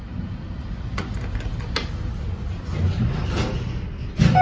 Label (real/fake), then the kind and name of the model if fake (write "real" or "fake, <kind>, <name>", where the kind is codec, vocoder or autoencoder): real